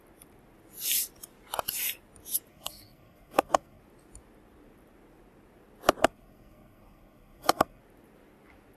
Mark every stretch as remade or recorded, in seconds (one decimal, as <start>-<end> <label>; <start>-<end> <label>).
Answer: 0.0-2.5 recorded; 2.5-3.8 remade; 3.8-6.0 recorded; 6.0-7.8 remade; 7.8-8.8 recorded